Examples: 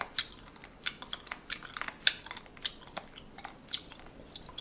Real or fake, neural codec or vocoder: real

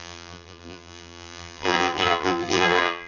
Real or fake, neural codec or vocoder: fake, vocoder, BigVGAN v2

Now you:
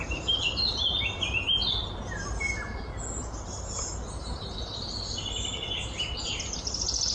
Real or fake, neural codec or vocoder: real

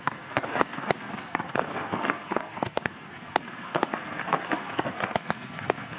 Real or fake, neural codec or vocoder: fake, codec, SNAC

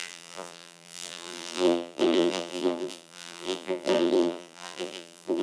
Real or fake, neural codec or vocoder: fake, vocoder, BigVGAN v2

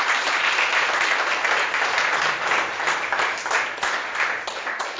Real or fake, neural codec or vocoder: real